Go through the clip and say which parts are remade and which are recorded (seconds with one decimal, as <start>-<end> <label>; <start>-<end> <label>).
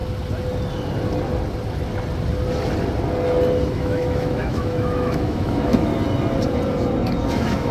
0.0-3.7 recorded; 3.7-5.9 remade; 5.9-7.3 recorded; 7.3-7.7 remade